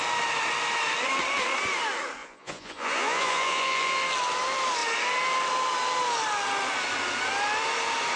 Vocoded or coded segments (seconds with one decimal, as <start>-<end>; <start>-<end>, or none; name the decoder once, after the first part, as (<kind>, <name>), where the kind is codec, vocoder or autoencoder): 2.2-3.9 (vocoder, Vocos)